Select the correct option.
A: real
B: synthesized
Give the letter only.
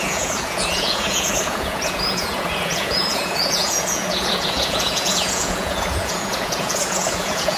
B